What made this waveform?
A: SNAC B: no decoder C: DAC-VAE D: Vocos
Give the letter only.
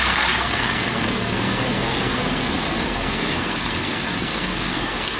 A